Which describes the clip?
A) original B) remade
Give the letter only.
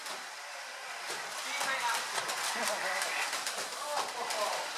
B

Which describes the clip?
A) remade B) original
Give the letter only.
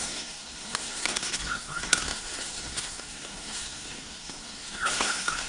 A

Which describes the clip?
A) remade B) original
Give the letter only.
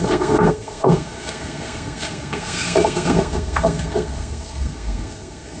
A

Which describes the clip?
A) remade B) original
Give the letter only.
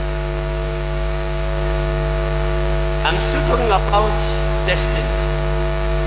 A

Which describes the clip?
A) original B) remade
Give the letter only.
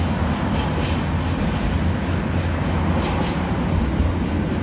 A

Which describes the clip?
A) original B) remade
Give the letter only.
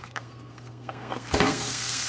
B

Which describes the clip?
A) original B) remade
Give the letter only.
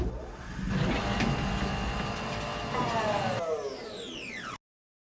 A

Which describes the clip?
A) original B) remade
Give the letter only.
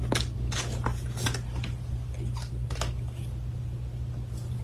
A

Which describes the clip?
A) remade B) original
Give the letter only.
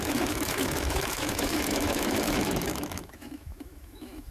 A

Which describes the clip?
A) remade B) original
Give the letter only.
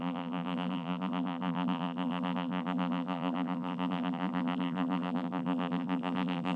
A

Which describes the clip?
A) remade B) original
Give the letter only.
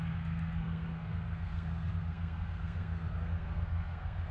A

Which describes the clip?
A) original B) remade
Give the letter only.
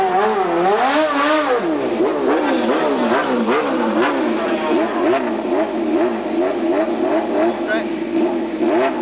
A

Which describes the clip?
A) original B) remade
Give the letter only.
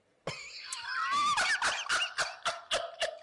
A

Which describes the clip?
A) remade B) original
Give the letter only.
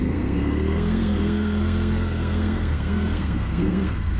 A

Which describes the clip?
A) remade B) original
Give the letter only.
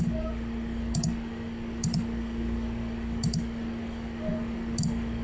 A